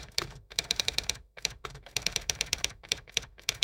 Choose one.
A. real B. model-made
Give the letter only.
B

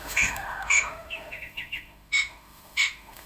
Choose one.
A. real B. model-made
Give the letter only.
B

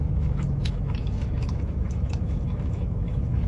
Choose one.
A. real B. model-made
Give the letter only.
B